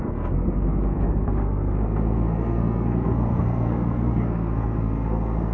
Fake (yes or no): yes